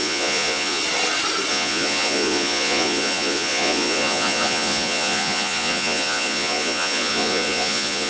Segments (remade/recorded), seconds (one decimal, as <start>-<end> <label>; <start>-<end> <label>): 0.0-0.8 remade; 0.8-1.5 recorded; 1.5-8.1 remade